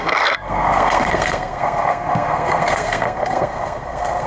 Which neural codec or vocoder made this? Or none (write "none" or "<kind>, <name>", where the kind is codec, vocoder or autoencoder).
codec, SNAC